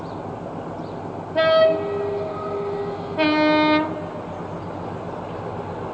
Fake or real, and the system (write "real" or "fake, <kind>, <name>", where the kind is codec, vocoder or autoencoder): real